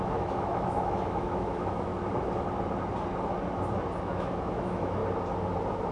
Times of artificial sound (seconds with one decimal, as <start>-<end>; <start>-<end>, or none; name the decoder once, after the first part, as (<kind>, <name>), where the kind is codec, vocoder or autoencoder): 0.0-1.9 (autoencoder, DAC-VAE); 4.0-5.0